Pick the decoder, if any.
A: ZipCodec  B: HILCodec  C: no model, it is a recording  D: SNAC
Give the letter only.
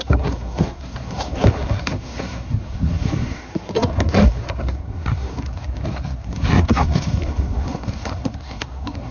D